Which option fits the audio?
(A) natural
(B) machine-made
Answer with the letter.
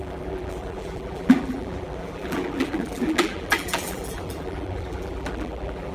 B